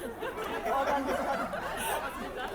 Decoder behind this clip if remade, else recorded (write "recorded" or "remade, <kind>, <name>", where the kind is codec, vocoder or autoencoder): recorded